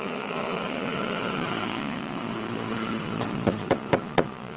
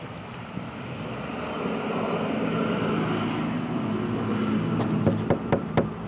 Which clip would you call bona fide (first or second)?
second